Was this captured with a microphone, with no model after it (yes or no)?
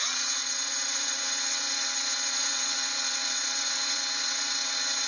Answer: no